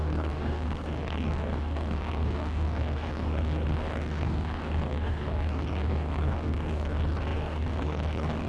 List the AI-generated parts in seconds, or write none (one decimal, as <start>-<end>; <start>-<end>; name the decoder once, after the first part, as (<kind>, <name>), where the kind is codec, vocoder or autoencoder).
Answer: 0.0-8.5 (codec, DAC)